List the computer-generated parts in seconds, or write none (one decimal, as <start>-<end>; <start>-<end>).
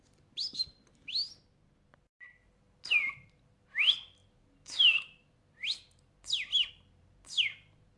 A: none